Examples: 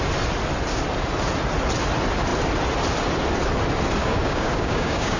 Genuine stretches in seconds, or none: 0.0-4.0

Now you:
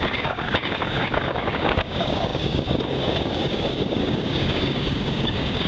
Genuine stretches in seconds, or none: none

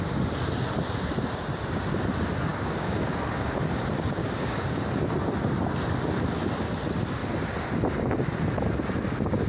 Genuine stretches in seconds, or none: 0.0-2.5; 3.6-4.2; 4.8-9.5

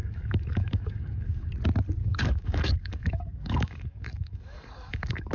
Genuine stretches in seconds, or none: 1.5-2.0